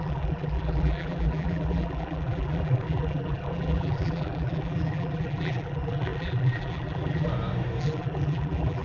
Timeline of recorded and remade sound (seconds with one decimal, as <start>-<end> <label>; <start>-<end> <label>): 0.0-7.3 remade; 7.3-7.8 recorded; 7.8-8.8 remade